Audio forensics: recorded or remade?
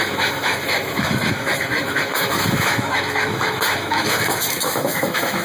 remade